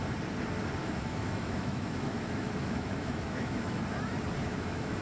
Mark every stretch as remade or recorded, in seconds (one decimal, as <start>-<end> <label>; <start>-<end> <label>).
0.0-0.8 recorded; 0.8-3.8 remade; 3.8-4.4 recorded; 4.4-5.0 remade